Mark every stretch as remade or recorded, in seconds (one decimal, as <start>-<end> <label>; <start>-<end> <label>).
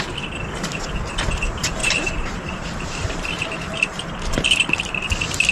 0.0-1.8 recorded; 1.8-5.1 remade; 5.1-5.5 recorded